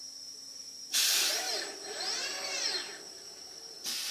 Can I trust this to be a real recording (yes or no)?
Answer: yes